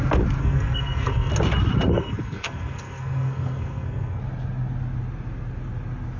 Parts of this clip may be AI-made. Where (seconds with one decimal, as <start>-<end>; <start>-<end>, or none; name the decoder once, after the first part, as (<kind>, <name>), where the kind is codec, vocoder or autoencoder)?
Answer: 0.4-1.3 (codec, SNAC); 1.9-4.2